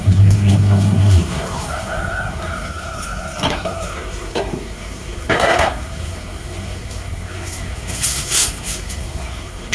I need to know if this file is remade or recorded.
remade